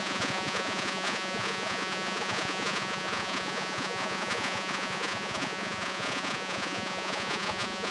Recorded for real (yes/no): no